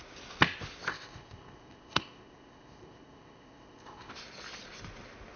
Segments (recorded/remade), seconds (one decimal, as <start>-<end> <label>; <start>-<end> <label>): 0.0-0.9 recorded; 0.9-4.1 remade; 4.1-5.4 recorded